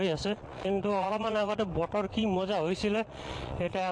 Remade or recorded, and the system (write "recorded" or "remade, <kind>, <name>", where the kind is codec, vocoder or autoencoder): remade, vocoder, Vocos